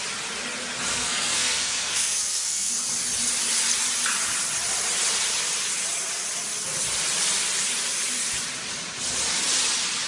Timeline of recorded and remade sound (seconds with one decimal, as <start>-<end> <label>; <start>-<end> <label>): 0.0-0.9 recorded; 0.9-2.7 remade; 2.7-10.1 recorded

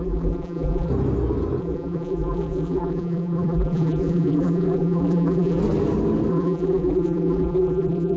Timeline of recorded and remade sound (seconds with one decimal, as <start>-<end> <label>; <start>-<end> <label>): 0.0-0.9 remade; 0.9-1.6 recorded; 1.6-5.6 remade; 5.6-6.3 recorded; 6.3-8.2 remade

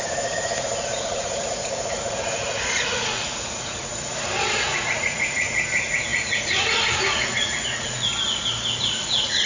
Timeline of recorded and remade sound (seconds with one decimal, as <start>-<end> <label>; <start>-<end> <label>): 0.0-3.9 remade; 3.9-4.6 recorded; 4.6-8.1 remade; 8.1-8.8 recorded; 8.8-9.5 remade

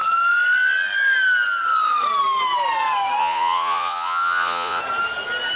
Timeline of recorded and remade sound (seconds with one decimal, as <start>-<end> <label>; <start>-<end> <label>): 0.0-3.2 recorded; 3.2-4.8 remade; 4.8-5.6 recorded

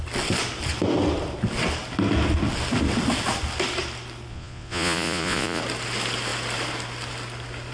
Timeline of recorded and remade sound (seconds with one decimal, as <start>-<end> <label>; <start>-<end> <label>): 0.0-4.3 recorded; 4.3-5.6 remade; 5.6-7.7 recorded

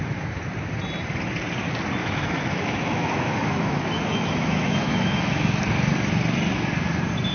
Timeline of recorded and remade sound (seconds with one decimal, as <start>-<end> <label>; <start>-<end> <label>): 0.0-2.0 recorded; 2.0-5.5 remade; 5.5-7.3 recorded

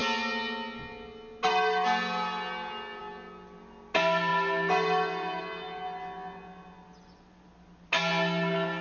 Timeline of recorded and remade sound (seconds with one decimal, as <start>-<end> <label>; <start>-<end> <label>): 0.0-8.8 recorded

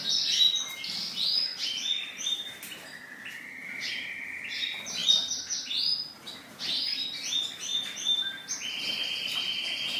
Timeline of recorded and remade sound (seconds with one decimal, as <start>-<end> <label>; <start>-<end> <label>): 0.0-10.0 recorded